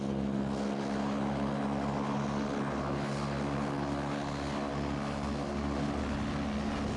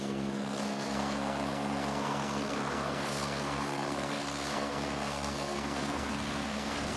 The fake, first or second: second